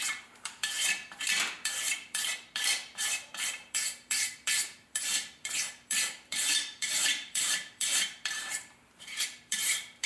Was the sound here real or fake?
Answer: fake